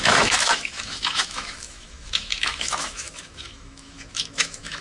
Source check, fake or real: fake